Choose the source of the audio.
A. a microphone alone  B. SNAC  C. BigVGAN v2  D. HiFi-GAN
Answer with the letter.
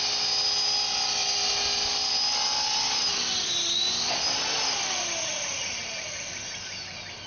A